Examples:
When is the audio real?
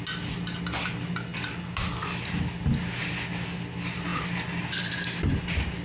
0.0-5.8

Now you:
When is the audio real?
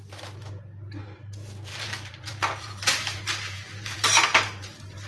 0.0-1.7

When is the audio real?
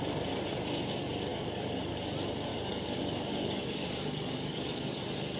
0.0-1.3; 1.9-2.5; 5.0-5.4